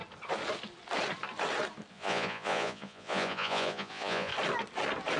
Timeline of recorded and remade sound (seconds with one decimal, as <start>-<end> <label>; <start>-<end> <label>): 0.0-1.9 recorded; 1.9-4.3 remade; 4.3-5.2 recorded